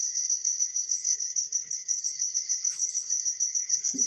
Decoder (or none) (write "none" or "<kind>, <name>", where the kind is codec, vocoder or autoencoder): codec, HILCodec